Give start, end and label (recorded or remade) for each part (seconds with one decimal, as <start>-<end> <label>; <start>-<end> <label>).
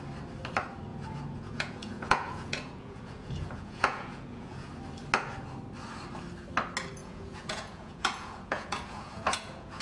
0.0-0.9 recorded; 0.9-4.7 remade; 4.7-7.0 recorded; 7.0-9.8 remade